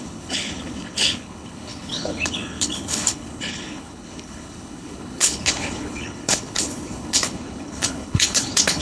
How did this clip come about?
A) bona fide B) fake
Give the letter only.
B